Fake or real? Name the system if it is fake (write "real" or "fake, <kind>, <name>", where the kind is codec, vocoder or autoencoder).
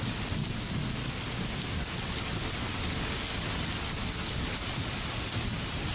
real